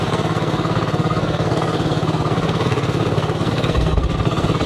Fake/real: fake